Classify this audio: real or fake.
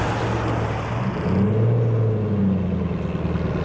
real